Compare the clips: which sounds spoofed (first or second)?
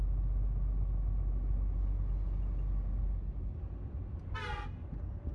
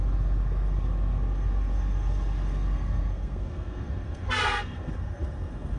second